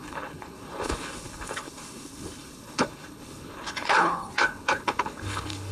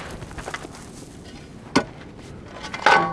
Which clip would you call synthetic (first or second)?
first